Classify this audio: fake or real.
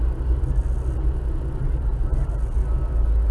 real